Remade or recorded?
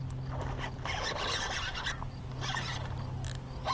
recorded